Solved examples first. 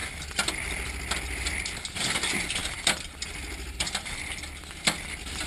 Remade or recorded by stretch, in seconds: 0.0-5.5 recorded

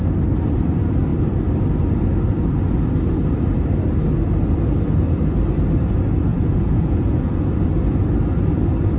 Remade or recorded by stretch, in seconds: 0.0-6.3 recorded; 6.3-7.4 remade; 7.4-9.0 recorded

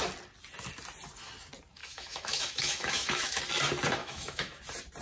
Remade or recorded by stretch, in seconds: 0.0-1.8 recorded; 1.8-3.4 remade; 3.4-4.0 recorded; 4.0-4.6 remade; 4.6-5.0 recorded

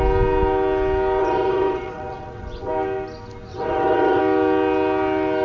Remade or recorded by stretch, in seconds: 0.0-1.2 recorded; 1.2-2.7 remade; 2.7-3.5 recorded; 3.5-4.2 remade; 4.2-5.4 recorded